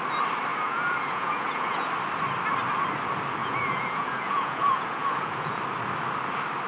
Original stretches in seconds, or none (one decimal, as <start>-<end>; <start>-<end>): 0.0-0.5; 1.9-3.4; 5.6-6.7